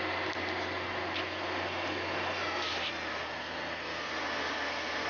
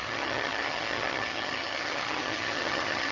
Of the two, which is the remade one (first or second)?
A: second